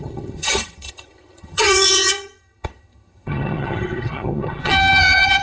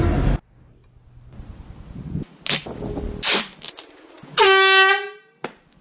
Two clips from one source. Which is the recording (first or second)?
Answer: second